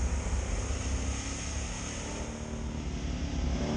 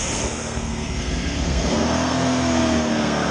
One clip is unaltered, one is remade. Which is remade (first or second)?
second